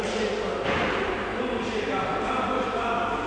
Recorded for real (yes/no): yes